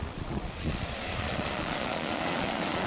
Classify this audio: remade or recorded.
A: remade